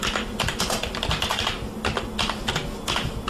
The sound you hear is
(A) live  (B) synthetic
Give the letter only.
A